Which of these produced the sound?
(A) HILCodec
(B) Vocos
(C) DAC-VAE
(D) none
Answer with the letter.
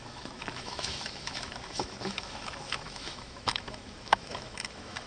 C